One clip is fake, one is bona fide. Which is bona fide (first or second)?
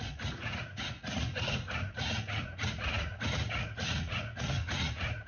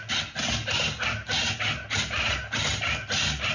second